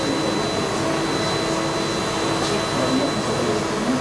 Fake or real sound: real